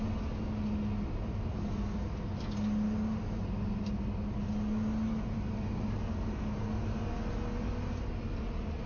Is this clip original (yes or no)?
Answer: yes